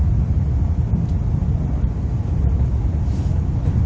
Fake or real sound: real